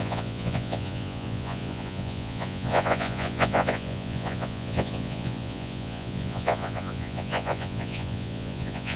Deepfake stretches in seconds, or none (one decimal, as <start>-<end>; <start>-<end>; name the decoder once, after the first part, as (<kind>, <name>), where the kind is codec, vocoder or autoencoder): 0.0-9.0 (vocoder, Vocos)